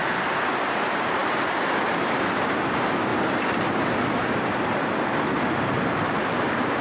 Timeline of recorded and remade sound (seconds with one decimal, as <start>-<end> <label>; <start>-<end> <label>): 0.0-0.6 recorded; 0.6-3.1 remade; 3.1-6.8 recorded